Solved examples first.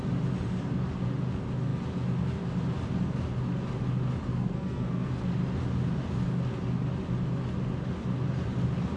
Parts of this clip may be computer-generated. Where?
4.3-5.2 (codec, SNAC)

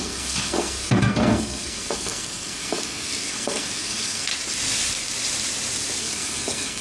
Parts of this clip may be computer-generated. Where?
0.0-4.3 (codec, SNAC); 6.0-6.8

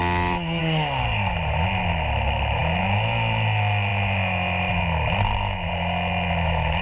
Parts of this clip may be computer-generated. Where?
0.6-1.4 (codec, DAC)